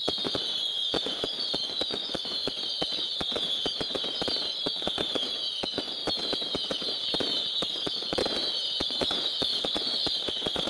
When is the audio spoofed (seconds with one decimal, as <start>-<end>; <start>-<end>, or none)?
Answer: 0.0-3.3; 4.3-6.0; 7.7-8.2; 8.8-10.7